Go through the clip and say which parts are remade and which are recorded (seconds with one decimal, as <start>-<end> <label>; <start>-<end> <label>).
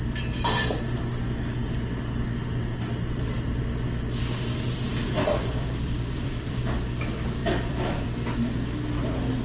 0.0-4.9 recorded; 4.9-6.6 remade; 6.6-7.4 recorded; 7.4-8.1 remade; 8.1-9.4 recorded